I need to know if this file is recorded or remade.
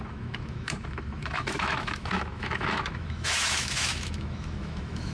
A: remade